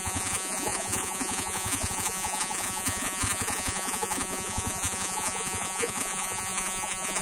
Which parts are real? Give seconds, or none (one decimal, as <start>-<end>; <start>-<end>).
none